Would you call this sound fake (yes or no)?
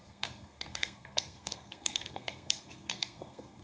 yes